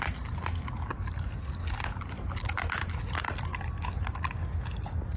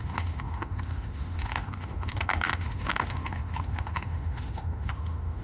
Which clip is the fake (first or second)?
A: second